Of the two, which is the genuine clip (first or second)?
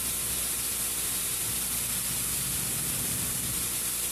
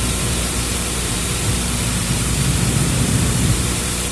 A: first